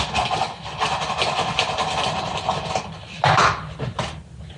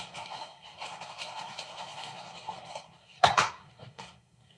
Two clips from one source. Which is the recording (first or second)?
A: first